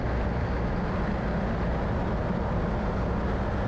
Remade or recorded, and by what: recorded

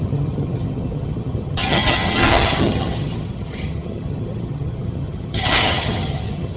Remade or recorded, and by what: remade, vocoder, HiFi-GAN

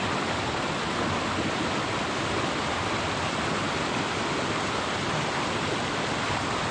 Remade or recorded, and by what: recorded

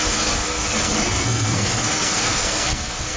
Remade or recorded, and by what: remade, codec, SNAC